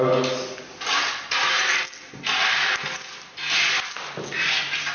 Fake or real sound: real